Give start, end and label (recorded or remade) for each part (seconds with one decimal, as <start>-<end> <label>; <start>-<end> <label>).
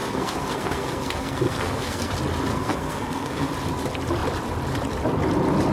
0.0-2.1 remade; 2.1-2.5 recorded; 2.5-3.5 remade; 3.5-5.7 recorded